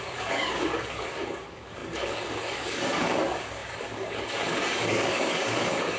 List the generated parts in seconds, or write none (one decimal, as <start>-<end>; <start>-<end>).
0.0-6.0

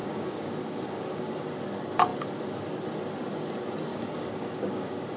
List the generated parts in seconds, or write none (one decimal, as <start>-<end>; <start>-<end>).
0.0-1.6; 3.9-5.2

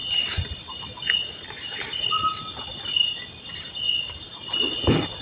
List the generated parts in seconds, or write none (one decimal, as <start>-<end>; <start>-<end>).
none

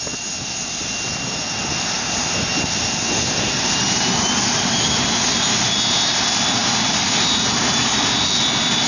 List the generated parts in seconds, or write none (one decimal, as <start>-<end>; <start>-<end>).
none

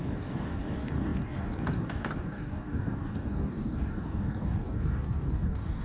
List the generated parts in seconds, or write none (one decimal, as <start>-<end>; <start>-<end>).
0.0-5.8

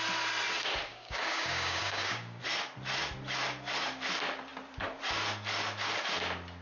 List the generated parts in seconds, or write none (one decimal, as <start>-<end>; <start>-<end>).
0.9-2.4

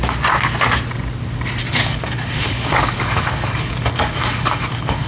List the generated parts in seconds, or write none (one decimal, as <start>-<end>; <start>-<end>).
1.6-5.1

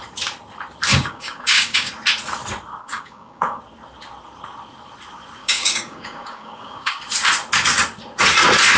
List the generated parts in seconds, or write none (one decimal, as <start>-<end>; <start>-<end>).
0.9-1.9; 2.8-3.6; 5.4-7.0